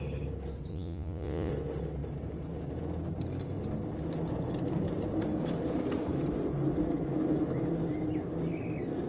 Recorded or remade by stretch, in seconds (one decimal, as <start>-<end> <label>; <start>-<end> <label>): 0.0-0.7 recorded; 0.7-1.5 remade; 1.5-9.1 recorded